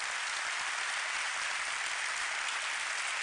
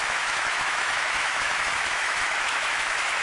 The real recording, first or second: first